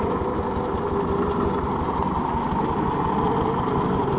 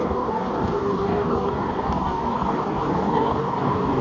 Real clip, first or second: first